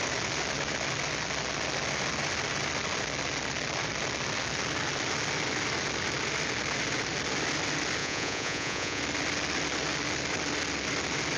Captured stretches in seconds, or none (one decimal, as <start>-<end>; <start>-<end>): 0.0-8.0; 9.0-11.4